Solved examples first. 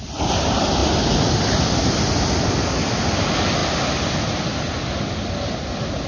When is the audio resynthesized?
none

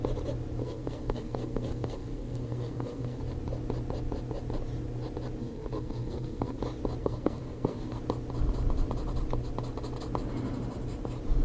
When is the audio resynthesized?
0.6-3.2; 5.4-6.6; 7.0-8.0

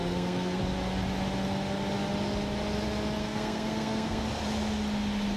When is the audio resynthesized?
0.0-0.6; 3.2-4.2

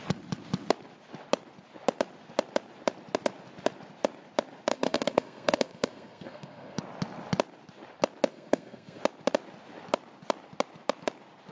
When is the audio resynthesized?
4.7-6.8; 8.3-9.0

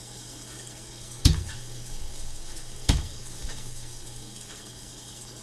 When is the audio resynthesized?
0.0-5.4

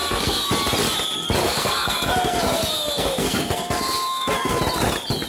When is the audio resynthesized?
0.0-0.5; 1.4-4.6

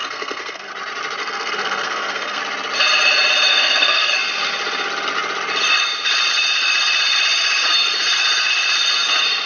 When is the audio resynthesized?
0.0-0.7; 1.2-2.4; 3.5-4.1